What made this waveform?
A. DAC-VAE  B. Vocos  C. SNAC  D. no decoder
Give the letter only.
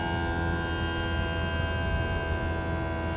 D